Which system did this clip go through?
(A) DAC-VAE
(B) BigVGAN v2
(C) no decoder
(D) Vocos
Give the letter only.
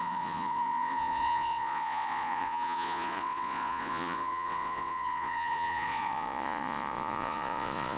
D